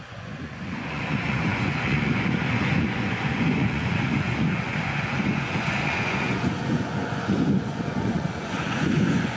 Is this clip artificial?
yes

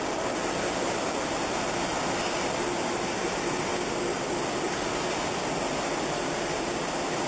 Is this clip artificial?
no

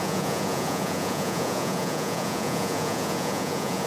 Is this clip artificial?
yes